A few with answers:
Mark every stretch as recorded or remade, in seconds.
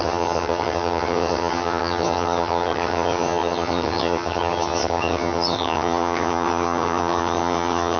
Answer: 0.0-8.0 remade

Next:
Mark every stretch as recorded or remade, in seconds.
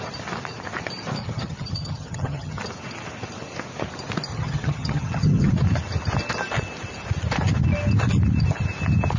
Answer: 0.0-1.2 recorded; 1.2-2.6 remade; 2.6-4.3 recorded; 4.3-5.5 remade; 5.5-9.2 recorded